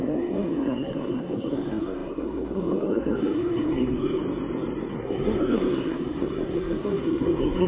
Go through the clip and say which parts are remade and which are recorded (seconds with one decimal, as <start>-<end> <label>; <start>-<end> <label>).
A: 0.0-4.2 remade; 4.2-4.9 recorded; 4.9-7.7 remade